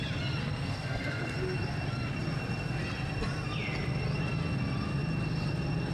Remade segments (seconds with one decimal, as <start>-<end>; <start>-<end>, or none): 0.4-1.4